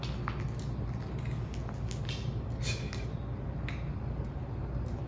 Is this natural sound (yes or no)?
yes